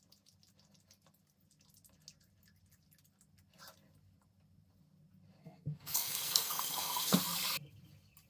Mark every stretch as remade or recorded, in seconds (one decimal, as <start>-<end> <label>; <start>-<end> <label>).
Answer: 0.0-5.4 recorded; 5.4-7.2 remade; 7.2-8.3 recorded